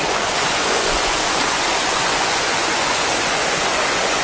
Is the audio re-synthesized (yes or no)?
yes